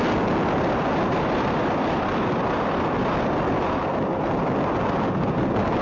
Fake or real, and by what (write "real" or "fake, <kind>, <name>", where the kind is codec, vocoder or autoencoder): real